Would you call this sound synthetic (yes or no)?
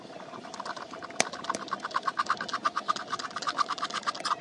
no